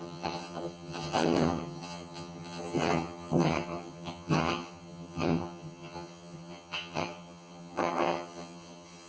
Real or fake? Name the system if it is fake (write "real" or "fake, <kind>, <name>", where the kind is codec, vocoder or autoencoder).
fake, vocoder, HiFi-GAN